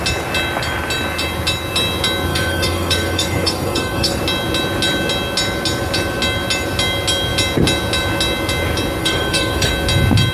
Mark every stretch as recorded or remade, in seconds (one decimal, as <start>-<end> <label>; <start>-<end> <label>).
0.0-2.3 recorded; 2.3-4.2 remade; 4.2-9.0 recorded; 9.0-9.7 remade; 9.7-10.3 recorded